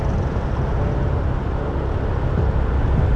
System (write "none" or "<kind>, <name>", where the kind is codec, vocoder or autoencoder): none